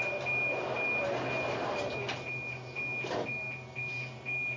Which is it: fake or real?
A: real